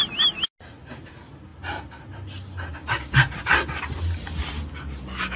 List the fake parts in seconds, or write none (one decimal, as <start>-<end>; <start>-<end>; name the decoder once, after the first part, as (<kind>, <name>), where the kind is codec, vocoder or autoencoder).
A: none